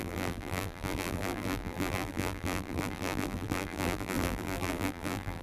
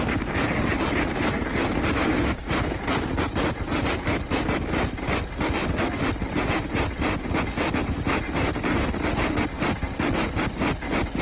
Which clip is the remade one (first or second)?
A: first